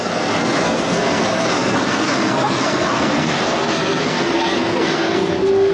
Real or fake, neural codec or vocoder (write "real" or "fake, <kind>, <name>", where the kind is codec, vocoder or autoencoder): fake, codec, SNAC